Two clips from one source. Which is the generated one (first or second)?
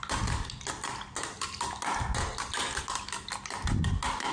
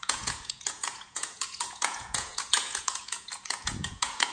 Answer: second